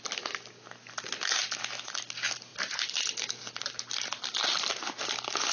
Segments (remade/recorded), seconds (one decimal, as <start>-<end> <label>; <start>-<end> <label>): 0.0-5.5 recorded

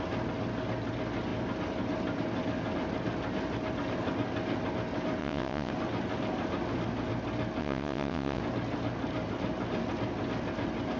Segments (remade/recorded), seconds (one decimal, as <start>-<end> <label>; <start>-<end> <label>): 0.0-5.2 recorded; 5.2-5.7 remade; 5.7-7.6 recorded; 7.6-8.4 remade; 8.4-11.0 recorded

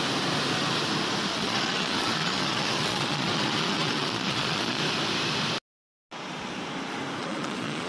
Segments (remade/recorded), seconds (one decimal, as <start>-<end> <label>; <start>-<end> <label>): 0.0-1.3 recorded; 1.3-4.8 remade; 4.8-7.2 recorded; 7.2-7.9 remade

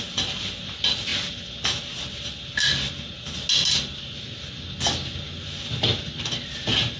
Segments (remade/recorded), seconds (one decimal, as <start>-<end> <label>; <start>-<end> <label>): 0.0-7.0 recorded

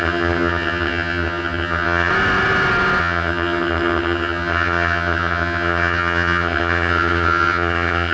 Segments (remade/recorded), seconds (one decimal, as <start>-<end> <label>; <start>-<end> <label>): 0.0-2.1 remade; 2.1-3.0 recorded; 3.0-8.1 remade

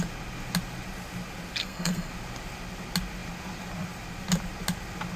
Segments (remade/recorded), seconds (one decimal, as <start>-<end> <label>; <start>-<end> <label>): 0.0-1.6 recorded; 1.6-2.1 remade; 2.1-5.2 recorded

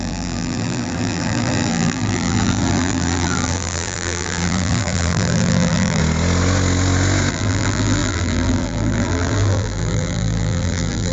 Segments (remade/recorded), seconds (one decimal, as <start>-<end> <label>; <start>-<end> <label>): 0.0-6.0 remade; 6.0-7.3 recorded; 7.3-11.1 remade